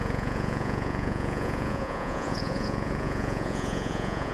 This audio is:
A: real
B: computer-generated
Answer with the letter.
B